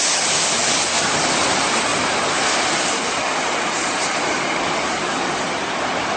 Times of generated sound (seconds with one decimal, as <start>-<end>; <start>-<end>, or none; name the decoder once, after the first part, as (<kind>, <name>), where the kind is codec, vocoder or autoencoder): none